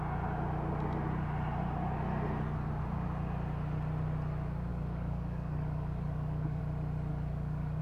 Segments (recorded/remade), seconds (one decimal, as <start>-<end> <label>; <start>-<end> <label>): 0.0-4.7 recorded; 4.7-6.6 remade; 6.6-7.1 recorded; 7.1-7.8 remade